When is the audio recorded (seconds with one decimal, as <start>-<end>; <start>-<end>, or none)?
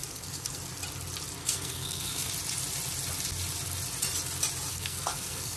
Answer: 0.6-1.4; 2.3-4.7